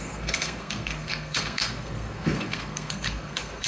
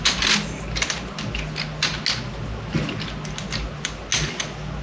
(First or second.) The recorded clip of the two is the second